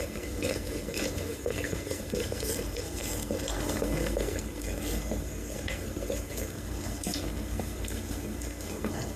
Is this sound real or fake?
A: fake